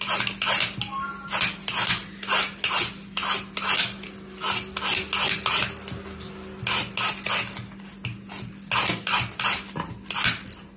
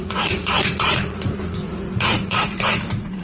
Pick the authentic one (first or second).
first